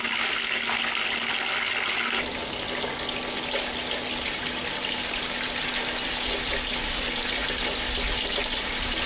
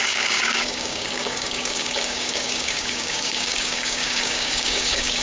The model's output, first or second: second